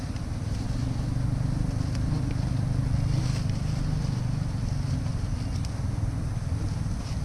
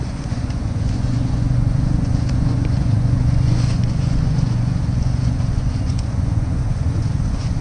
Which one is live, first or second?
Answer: first